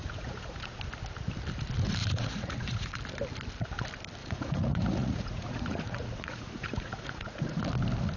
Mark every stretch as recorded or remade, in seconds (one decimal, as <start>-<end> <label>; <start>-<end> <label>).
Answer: 0.0-0.8 remade; 0.8-2.0 recorded; 2.0-3.0 remade; 3.0-4.2 recorded; 4.2-7.6 remade; 7.6-8.2 recorded